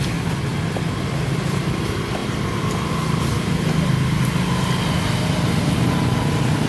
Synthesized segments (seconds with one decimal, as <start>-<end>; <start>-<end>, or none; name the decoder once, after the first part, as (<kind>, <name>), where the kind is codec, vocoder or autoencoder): none